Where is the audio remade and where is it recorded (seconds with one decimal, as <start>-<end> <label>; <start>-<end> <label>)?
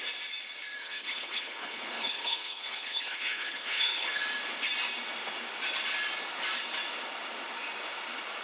0.0-0.8 recorded; 0.8-4.2 remade; 4.2-8.4 recorded